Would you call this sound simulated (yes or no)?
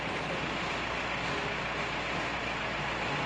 no